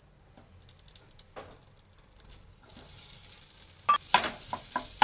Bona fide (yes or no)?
yes